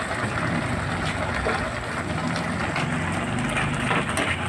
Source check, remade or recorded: recorded